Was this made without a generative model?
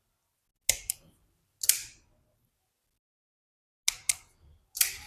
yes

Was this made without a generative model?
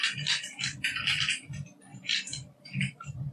yes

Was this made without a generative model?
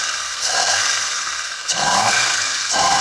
no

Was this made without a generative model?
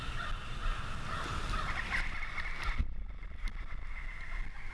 yes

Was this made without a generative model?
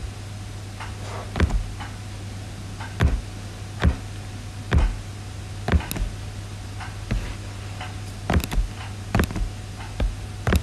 yes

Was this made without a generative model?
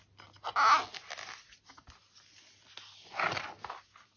yes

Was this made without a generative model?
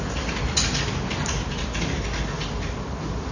yes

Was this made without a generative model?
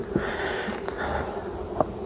yes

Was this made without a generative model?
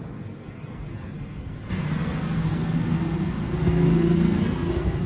no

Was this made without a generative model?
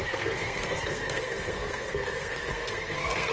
no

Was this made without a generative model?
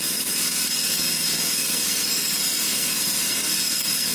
no